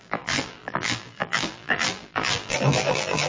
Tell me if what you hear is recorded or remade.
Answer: remade